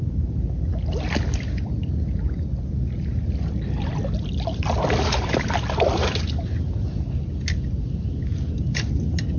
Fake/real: real